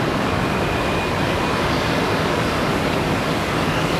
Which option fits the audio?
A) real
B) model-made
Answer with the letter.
B